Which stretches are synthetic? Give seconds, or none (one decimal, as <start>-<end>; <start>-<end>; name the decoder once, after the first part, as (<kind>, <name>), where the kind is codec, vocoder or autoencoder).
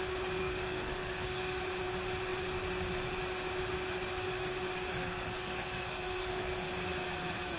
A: 0.4-1.6 (codec, SNAC); 4.9-6.7